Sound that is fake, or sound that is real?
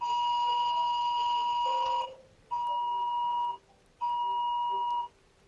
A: real